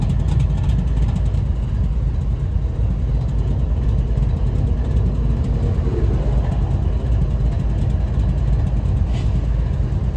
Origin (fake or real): real